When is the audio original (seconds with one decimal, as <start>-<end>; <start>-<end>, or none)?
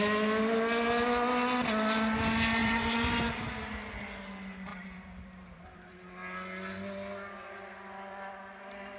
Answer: 0.0-2.6; 3.5-4.7; 5.9-9.0